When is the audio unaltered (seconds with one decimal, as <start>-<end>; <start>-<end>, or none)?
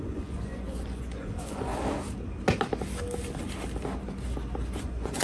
1.7-4.8